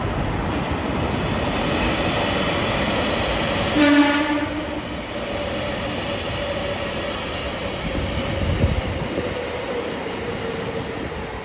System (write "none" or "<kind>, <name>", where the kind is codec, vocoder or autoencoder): none